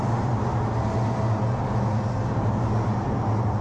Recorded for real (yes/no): yes